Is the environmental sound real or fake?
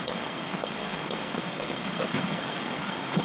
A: fake